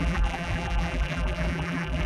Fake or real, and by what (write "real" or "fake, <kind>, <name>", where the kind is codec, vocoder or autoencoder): fake, vocoder, BigVGAN v2